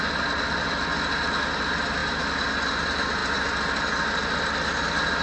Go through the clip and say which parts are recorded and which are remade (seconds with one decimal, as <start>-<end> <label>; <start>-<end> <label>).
0.0-5.2 recorded

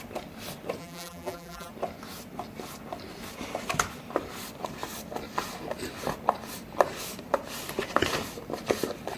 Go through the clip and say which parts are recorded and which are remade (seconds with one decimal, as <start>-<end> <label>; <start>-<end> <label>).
0.0-0.8 recorded; 0.8-1.7 remade; 1.7-9.2 recorded

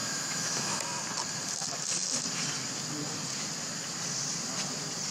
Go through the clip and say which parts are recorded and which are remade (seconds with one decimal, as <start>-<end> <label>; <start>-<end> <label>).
0.0-0.8 remade; 0.8-5.1 recorded

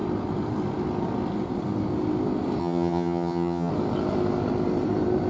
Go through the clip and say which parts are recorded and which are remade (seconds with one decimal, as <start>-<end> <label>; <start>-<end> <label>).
0.0-2.6 recorded; 2.6-3.7 remade; 3.7-5.3 recorded

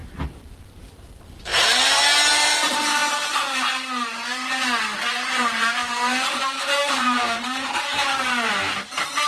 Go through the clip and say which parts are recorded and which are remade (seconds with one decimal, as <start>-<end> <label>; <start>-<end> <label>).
0.0-1.5 remade; 1.5-2.3 recorded; 2.3-9.3 remade